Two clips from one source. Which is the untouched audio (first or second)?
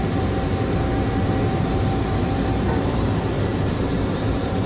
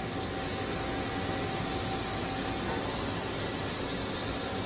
second